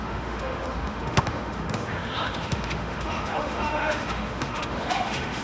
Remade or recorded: remade